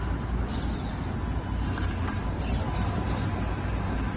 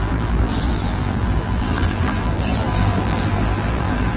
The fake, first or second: second